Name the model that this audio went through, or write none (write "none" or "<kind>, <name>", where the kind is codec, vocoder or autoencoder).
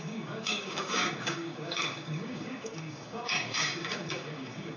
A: codec, DAC